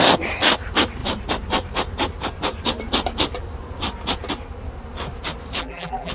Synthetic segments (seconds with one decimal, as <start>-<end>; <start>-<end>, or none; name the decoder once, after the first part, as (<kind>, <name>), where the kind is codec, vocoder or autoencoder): 5.6-6.1 (vocoder, BigVGAN v2)